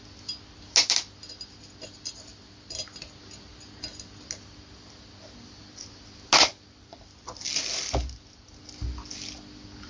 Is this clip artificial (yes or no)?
no